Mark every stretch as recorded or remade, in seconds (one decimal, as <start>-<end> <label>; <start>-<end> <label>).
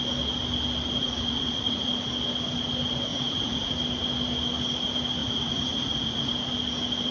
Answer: 0.0-1.0 recorded; 1.0-1.9 remade; 1.9-3.1 recorded; 3.1-3.7 remade; 3.7-5.2 recorded; 5.2-6.3 remade; 6.3-7.1 recorded